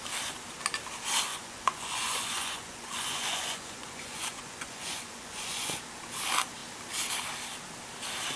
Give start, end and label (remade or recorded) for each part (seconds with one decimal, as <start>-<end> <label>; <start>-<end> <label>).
0.0-1.3 recorded; 1.3-5.8 remade; 5.8-8.4 recorded